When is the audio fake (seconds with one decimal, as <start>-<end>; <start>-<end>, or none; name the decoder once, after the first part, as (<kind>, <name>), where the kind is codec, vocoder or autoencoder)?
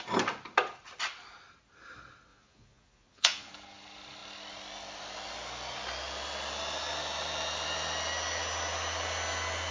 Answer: 2.3-3.5 (vocoder, Vocos)